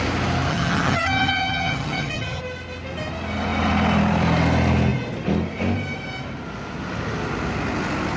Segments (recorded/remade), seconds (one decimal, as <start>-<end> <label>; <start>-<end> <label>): 0.0-0.5 recorded; 0.5-2.4 remade; 2.4-8.2 recorded